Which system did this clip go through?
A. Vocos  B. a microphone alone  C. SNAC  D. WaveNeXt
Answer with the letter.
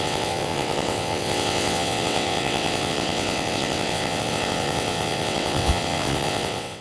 D